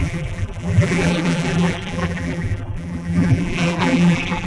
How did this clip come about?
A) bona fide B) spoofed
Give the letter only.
B